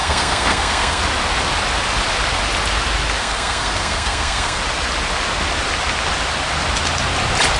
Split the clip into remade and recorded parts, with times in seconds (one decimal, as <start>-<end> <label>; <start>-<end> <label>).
0.0-1.0 remade; 1.0-3.2 recorded; 3.2-4.6 remade; 4.6-7.6 recorded